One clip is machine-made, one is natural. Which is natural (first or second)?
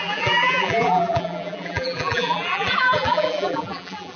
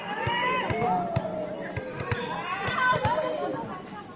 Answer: second